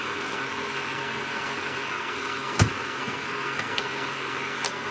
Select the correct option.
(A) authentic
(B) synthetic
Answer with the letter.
B